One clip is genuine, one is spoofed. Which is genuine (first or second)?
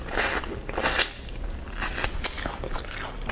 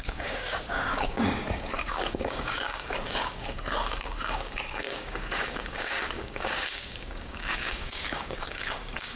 first